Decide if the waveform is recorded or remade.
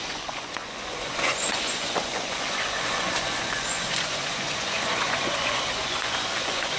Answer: remade